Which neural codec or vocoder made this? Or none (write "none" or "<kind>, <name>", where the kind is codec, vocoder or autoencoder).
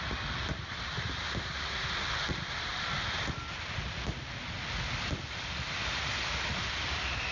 none